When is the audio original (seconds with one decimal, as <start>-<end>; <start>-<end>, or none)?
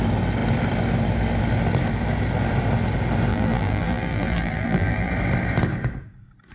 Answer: 0.0-3.3; 5.1-6.5